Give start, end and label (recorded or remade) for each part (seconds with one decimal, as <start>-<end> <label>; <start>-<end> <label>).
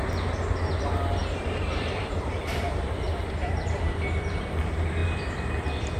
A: 0.0-1.2 recorded; 1.2-4.3 remade; 4.3-5.0 recorded; 5.0-5.5 remade; 5.5-6.0 recorded